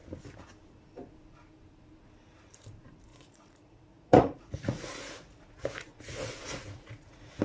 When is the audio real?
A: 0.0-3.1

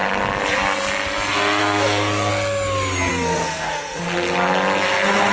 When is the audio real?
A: 0.0-1.6; 2.3-3.1; 4.0-5.3

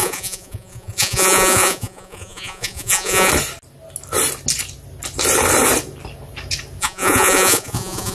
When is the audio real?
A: 3.3-6.8

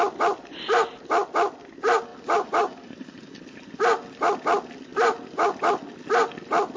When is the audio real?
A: 0.0-2.1; 3.7-6.8